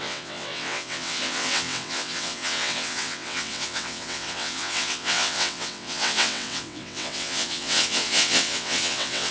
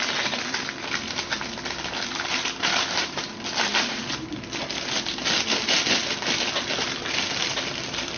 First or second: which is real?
second